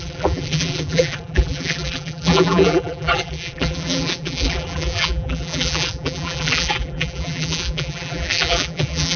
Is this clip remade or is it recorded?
remade